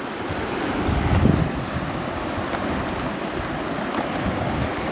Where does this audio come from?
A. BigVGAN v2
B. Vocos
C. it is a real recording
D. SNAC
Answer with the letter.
C